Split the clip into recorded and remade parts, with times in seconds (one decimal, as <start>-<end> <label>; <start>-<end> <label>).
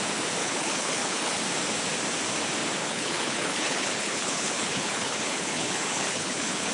0.0-0.4 recorded; 0.4-1.4 remade; 1.4-2.8 recorded; 2.8-6.7 remade